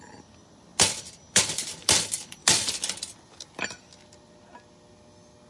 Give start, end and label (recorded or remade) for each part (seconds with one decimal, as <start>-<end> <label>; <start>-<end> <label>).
0.0-5.5 recorded